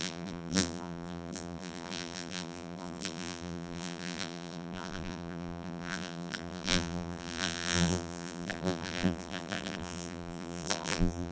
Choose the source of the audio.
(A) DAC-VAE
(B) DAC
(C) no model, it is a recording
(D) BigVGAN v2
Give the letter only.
D